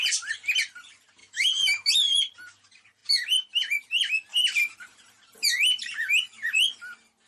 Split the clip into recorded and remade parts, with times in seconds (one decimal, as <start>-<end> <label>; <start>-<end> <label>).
0.0-1.2 recorded; 1.2-1.9 remade; 1.9-7.3 recorded